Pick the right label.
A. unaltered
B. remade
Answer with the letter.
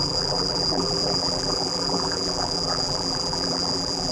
B